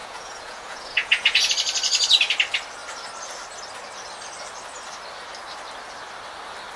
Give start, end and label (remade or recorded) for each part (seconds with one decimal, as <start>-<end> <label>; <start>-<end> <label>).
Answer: 0.0-1.5 remade; 1.5-6.8 recorded